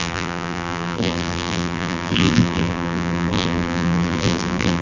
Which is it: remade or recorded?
remade